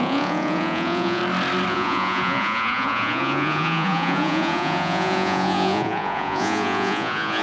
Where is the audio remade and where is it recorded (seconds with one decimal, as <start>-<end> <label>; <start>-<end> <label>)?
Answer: 0.0-1.2 remade; 1.2-1.7 recorded; 1.7-7.4 remade